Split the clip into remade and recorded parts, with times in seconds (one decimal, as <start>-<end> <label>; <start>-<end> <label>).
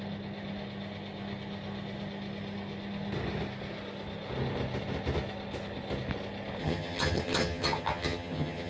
0.0-6.6 recorded; 6.6-8.7 remade